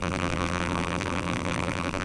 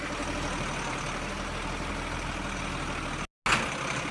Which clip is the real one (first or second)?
second